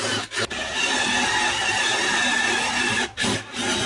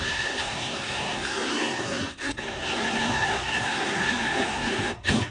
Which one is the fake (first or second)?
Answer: second